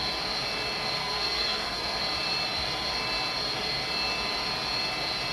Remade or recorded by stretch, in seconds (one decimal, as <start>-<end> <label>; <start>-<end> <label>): 0.0-1.0 recorded; 1.0-2.0 remade; 2.0-5.3 recorded